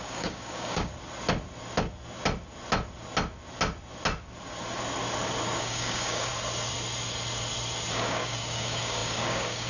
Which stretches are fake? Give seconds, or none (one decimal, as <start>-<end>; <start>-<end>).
0.0-0.9; 5.6-6.3; 7.9-9.7